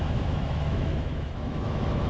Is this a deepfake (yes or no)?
yes